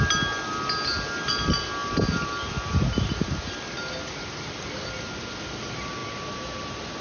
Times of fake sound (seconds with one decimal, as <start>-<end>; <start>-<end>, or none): none